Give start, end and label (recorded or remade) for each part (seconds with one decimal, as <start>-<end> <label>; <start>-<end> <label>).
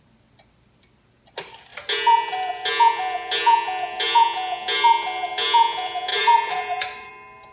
0.0-6.1 recorded; 6.1-7.1 remade; 7.1-7.5 recorded